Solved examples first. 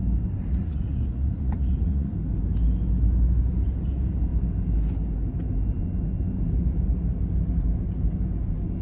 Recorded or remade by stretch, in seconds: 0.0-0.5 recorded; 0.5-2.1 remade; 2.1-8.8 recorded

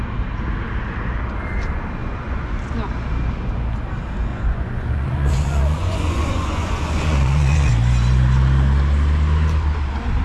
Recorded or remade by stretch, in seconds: 0.0-2.0 recorded; 2.0-2.7 remade; 2.7-4.3 recorded; 4.3-7.7 remade; 7.7-10.2 recorded

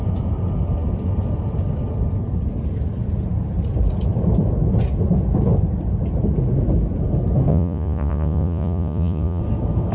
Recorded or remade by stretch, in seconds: 0.0-7.5 recorded; 7.5-9.4 remade; 9.4-9.9 recorded

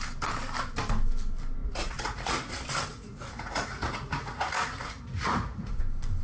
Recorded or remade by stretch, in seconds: 0.0-1.6 recorded; 1.6-2.5 remade; 2.5-2.9 recorded; 2.9-5.8 remade; 5.8-6.2 recorded

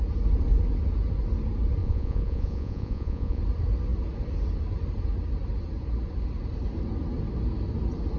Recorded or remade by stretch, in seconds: 0.0-1.8 recorded; 1.8-3.4 remade; 3.4-8.2 recorded

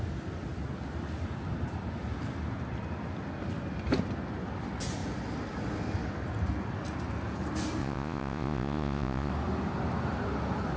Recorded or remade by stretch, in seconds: 0.0-7.8 recorded; 7.8-9.3 remade; 9.3-10.8 recorded